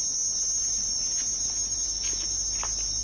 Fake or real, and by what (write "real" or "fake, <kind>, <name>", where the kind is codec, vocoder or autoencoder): real